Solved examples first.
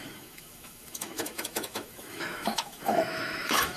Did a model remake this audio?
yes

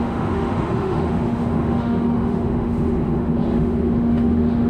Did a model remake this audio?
yes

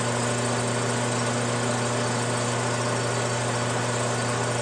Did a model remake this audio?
no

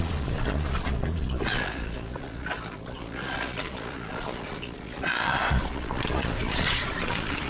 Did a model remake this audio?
yes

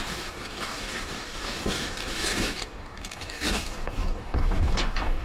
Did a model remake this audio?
yes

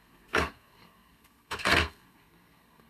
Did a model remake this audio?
yes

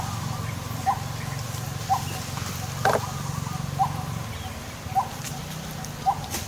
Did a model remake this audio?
no